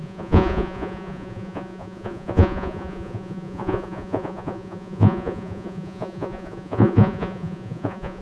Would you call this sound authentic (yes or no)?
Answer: no